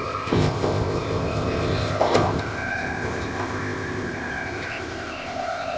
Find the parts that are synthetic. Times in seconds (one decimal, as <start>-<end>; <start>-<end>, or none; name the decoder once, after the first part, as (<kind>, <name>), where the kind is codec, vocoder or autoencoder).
0.0-5.8 (codec, ZipCodec)